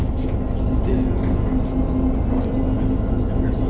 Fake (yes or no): no